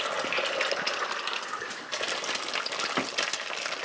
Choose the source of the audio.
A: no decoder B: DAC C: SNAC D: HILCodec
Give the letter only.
A